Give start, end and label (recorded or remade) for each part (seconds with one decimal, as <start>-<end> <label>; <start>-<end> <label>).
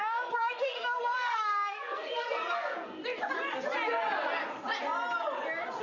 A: 0.0-3.0 remade; 3.0-5.8 recorded